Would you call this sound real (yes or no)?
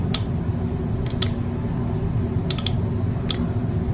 yes